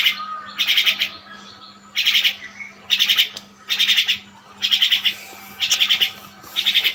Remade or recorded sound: recorded